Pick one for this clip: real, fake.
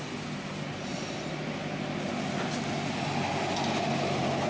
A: real